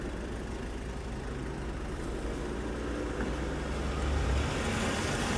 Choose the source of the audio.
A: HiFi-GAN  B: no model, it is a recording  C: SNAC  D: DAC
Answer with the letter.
B